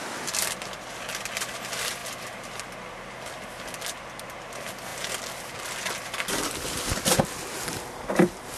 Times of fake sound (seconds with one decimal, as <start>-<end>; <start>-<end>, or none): none